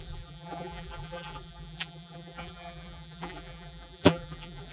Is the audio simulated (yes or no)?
yes